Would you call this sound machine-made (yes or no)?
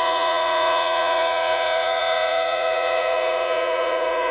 yes